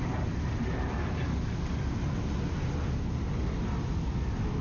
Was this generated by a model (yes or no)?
no